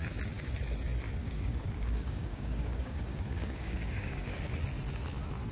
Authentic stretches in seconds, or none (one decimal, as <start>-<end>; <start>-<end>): 0.0-1.2; 4.5-5.5